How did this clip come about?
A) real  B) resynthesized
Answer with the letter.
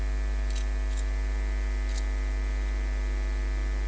A